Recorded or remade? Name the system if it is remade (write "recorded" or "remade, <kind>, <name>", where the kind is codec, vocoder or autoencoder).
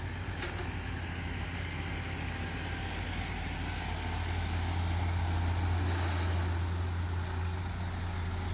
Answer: recorded